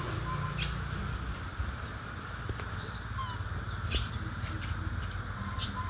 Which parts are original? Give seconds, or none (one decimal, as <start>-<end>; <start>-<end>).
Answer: 0.0-5.9